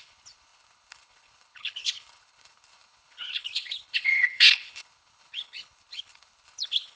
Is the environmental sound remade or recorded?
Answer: remade